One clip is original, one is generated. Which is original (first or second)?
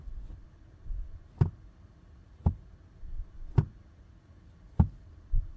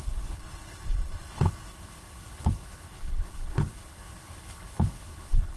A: first